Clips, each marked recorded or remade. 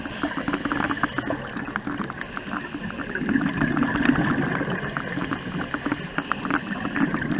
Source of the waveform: recorded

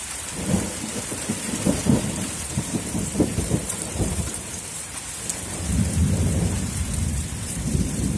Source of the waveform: remade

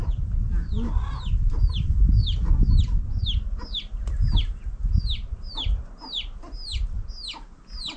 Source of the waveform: recorded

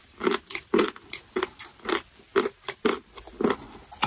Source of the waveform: recorded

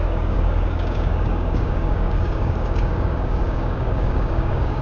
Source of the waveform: remade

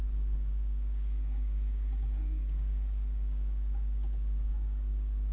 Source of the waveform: remade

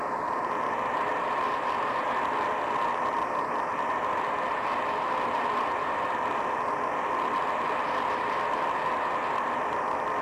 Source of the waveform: recorded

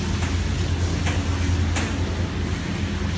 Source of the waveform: recorded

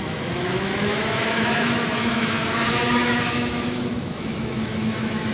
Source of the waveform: remade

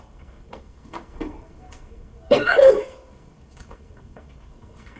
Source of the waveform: remade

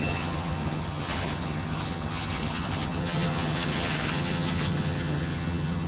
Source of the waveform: remade